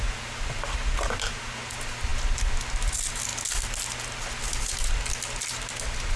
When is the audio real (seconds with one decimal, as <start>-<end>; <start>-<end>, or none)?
0.0-6.2